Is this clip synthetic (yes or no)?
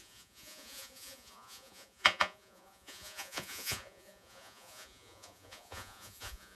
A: yes